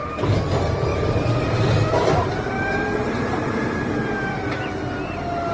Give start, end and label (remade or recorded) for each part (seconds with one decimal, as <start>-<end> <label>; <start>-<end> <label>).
0.0-0.9 recorded; 0.9-4.2 remade; 4.2-5.5 recorded